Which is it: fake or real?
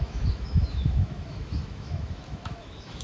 fake